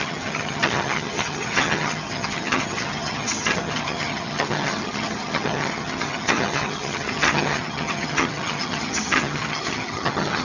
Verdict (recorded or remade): remade